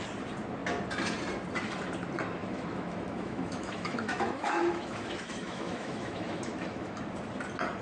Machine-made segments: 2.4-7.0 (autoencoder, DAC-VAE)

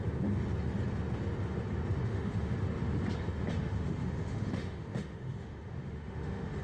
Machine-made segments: 2.0-2.5 (autoencoder, DAC-VAE); 3.6-6.6

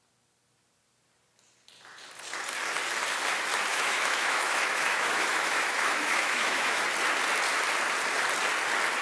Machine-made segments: 3.7-6.8 (autoencoder, DAC-VAE)

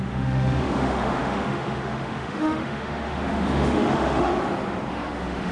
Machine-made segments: 0.0-4.3 (autoencoder, DAC-VAE); 4.9-5.5